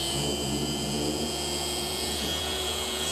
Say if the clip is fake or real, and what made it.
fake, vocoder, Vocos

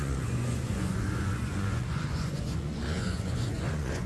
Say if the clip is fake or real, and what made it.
fake, vocoder, Vocos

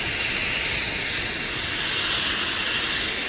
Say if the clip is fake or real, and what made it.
real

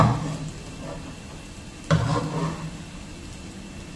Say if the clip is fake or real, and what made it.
real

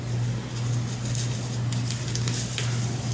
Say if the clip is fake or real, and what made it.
real